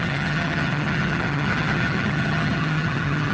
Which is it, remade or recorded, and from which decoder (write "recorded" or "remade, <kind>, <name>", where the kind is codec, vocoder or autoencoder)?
remade, vocoder, HiFi-GAN